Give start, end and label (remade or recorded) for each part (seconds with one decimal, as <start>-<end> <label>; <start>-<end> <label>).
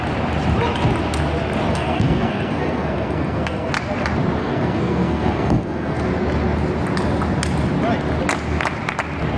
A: 0.0-1.7 recorded; 1.7-3.7 remade; 3.7-4.4 recorded; 4.4-6.1 remade; 6.1-9.4 recorded